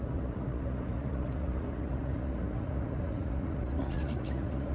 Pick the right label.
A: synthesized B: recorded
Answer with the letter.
A